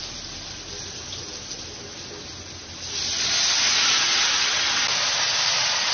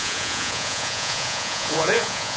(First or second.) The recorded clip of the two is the first